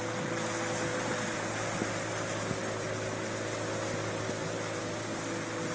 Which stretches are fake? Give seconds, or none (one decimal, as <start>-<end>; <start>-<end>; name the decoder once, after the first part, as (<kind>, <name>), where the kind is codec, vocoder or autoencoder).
none